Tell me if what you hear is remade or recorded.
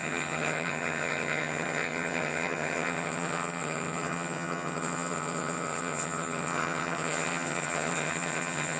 remade